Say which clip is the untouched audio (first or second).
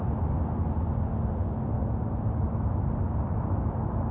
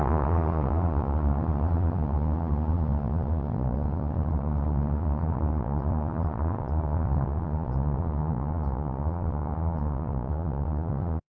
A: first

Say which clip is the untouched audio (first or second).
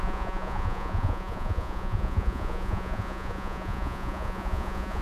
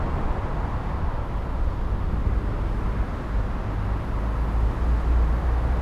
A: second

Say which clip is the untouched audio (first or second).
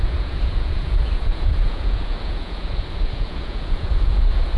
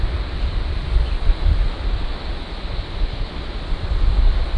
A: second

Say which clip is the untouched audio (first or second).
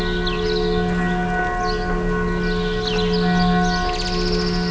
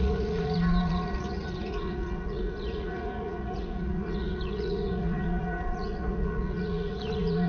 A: first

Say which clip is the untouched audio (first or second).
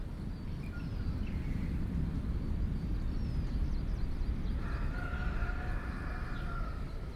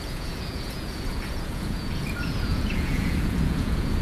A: first